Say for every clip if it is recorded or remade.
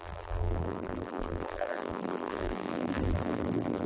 remade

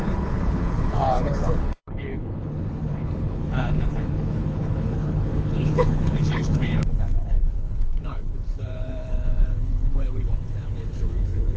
remade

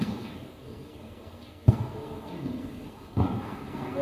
remade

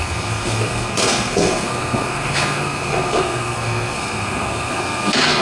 remade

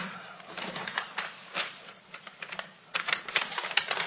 remade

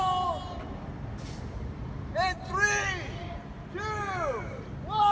recorded